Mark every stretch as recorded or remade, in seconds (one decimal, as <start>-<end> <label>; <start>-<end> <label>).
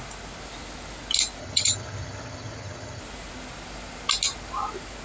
0.0-1.4 recorded; 1.4-3.0 remade; 3.0-5.0 recorded